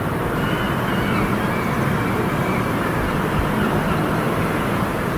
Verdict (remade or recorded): recorded